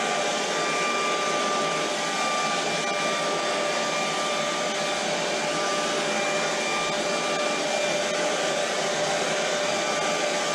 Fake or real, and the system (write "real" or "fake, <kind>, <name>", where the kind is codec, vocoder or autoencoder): real